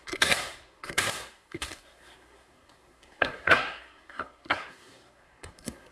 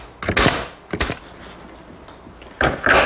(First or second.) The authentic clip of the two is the second